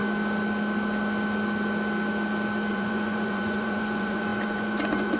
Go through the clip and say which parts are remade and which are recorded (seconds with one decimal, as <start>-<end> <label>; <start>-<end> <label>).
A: 0.0-2.7 recorded; 2.7-5.2 remade